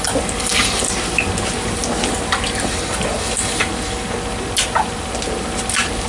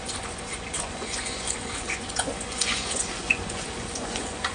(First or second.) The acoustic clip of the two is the first